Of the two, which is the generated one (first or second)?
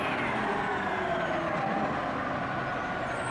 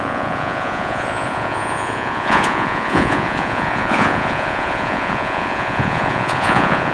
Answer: second